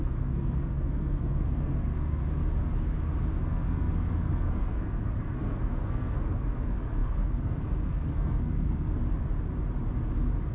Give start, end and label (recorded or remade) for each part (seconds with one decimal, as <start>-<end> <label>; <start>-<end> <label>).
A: 0.0-2.2 remade; 2.2-3.3 recorded; 3.3-9.0 remade; 9.0-10.5 recorded